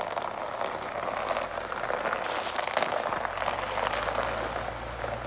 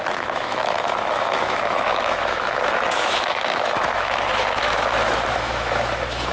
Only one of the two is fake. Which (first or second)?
second